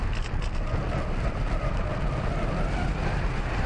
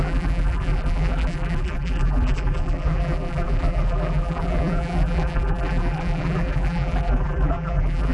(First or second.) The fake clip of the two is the second